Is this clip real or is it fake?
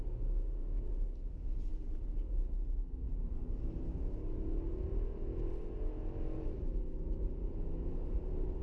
real